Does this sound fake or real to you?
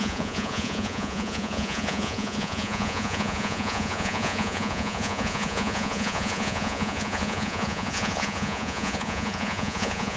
fake